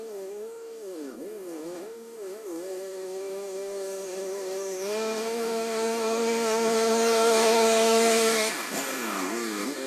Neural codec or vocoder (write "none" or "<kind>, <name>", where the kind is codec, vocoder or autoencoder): codec, DAC